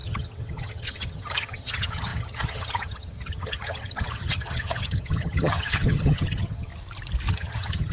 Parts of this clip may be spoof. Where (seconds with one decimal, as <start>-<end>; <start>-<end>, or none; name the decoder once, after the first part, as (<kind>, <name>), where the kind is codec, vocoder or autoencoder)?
0.0-6.7 (vocoder, HiFi-GAN); 7.3-7.9